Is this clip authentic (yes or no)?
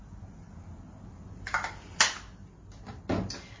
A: yes